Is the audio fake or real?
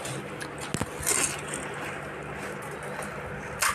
real